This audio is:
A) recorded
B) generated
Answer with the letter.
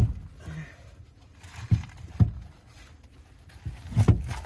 A